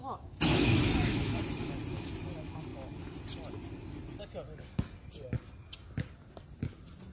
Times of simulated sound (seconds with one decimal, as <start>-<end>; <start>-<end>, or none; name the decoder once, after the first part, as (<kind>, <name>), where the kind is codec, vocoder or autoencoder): 0.0-1.4 (autoencoder, DAC-VAE)